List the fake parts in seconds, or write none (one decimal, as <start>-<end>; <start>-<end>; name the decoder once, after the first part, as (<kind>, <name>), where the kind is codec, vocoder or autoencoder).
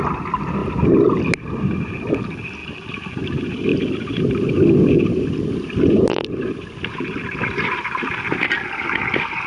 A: 3.7-7.0 (vocoder, BigVGAN v2)